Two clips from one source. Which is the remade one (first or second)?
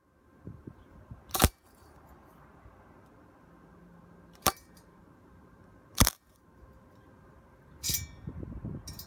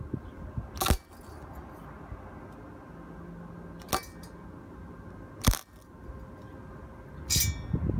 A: first